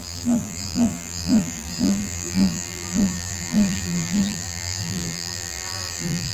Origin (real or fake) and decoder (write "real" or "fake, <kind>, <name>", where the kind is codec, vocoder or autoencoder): fake, vocoder, BigVGAN v2